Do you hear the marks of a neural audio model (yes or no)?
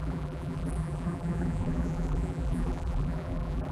yes